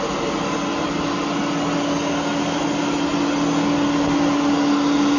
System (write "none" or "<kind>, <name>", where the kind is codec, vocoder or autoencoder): none